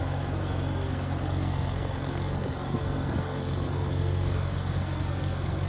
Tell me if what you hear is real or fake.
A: fake